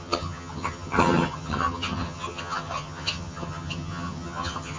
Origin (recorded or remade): remade